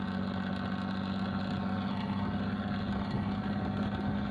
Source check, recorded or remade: recorded